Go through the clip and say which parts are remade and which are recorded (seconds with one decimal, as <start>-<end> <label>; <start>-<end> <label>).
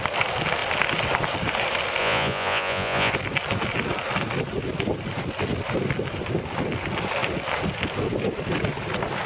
0.0-2.0 recorded; 2.0-3.1 remade; 3.1-9.3 recorded